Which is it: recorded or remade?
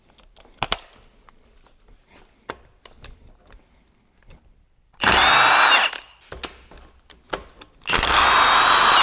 recorded